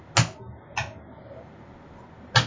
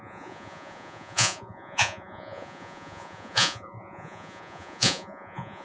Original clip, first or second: first